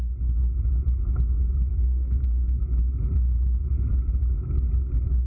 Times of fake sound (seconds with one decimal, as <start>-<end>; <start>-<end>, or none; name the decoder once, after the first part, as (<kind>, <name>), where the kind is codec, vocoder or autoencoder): 1.7-2.6 (codec, SNAC)